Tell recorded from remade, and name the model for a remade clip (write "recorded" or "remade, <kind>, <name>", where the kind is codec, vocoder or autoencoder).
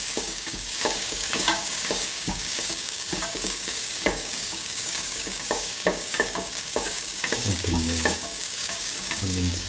remade, codec, DAC